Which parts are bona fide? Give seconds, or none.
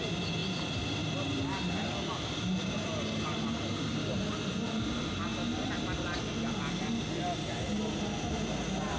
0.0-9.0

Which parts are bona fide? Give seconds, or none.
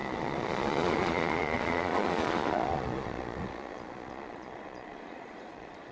none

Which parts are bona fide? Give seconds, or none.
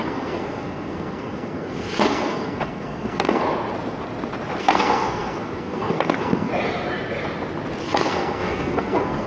3.4-4.6; 6.5-7.8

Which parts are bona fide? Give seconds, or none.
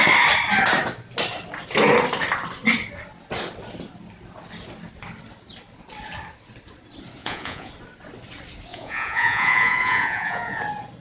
0.0-7.2; 7.7-8.7; 10.6-11.0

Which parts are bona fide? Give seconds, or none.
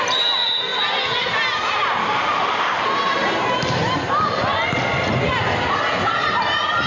0.0-2.0; 2.8-6.9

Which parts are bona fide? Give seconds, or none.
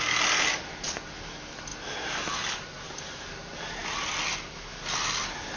0.0-5.6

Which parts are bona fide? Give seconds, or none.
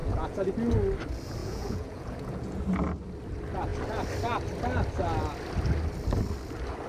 0.5-1.4; 2.6-6.9